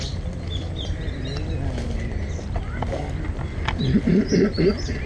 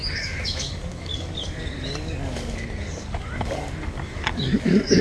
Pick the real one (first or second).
first